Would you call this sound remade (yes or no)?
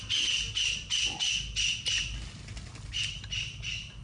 no